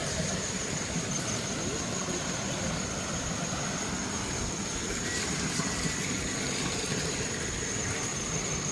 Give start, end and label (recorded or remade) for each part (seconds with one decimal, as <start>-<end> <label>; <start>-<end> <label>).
0.0-0.6 remade; 0.6-8.7 recorded